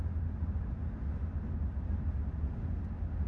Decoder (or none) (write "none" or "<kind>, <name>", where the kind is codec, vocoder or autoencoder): none